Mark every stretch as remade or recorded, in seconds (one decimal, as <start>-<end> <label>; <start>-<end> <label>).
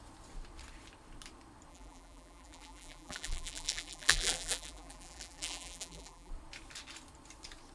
0.0-1.7 recorded; 1.7-6.3 remade; 6.3-7.7 recorded